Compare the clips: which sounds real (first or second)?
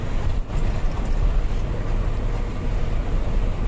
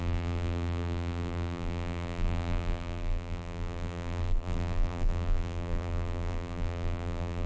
first